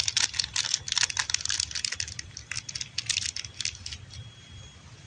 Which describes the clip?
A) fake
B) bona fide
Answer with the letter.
B